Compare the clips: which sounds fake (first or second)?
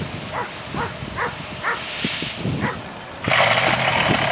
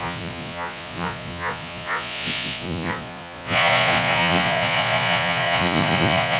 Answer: second